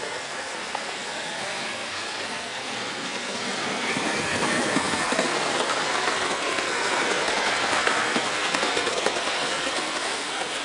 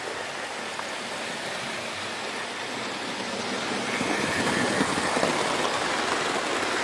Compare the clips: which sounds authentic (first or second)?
second